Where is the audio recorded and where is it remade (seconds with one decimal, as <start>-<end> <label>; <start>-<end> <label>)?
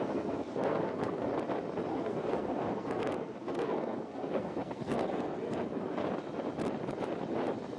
0.0-1.3 remade; 1.3-1.9 recorded; 1.9-6.0 remade; 6.0-7.8 recorded